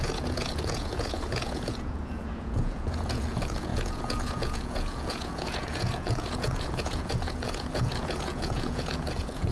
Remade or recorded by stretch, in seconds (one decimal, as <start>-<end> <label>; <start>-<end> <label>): 0.0-9.5 remade